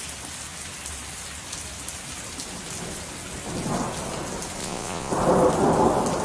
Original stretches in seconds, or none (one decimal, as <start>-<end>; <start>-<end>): 0.0-4.6; 5.1-6.2